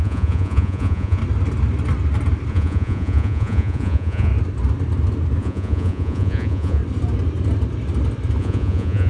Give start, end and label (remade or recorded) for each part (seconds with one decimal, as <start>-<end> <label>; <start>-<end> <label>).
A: 0.0-1.2 remade; 1.2-2.5 recorded; 2.5-4.3 remade; 4.3-5.4 recorded; 5.4-6.8 remade; 6.8-8.4 recorded; 8.4-9.1 remade